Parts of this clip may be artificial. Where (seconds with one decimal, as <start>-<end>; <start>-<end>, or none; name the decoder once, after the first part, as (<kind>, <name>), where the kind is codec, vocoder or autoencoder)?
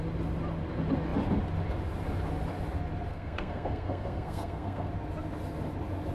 3.1-4.9 (codec, SNAC)